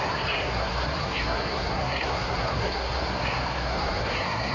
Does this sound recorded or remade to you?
remade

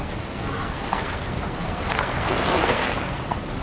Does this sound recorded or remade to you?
remade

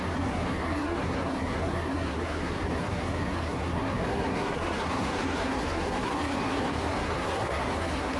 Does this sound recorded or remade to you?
remade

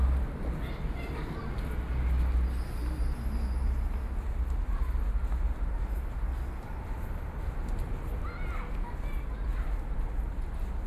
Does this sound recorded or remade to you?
recorded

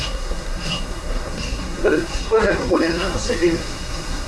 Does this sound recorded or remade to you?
remade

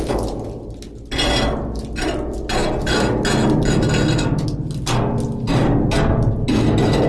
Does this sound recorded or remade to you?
recorded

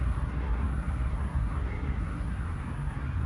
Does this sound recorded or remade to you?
remade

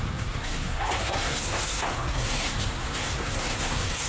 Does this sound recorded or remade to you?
remade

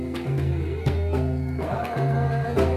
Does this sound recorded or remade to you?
remade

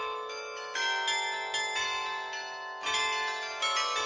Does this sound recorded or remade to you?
recorded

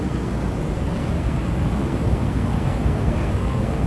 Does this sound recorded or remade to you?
remade